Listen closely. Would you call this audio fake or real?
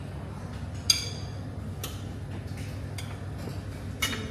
real